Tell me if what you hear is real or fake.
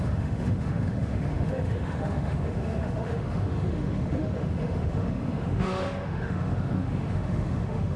fake